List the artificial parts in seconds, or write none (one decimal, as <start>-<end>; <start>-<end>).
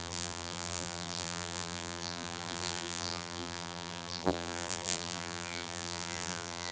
0.0-6.7